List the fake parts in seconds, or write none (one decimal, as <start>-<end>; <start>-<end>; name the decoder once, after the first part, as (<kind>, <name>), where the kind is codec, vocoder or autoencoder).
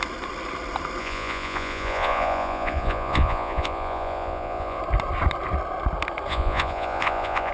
1.0-4.8 (vocoder, Vocos); 6.3-7.5